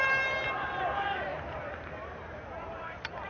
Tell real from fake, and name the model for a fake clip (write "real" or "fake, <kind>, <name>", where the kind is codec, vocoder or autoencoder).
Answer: fake, vocoder, BigVGAN v2